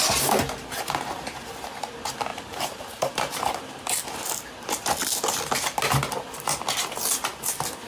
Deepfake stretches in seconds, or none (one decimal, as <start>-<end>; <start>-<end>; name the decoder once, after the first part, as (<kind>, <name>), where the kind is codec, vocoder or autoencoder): 2.3-3.6 (vocoder, BigVGAN v2)